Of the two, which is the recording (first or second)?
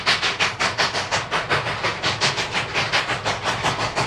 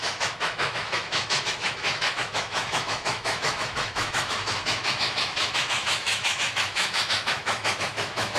first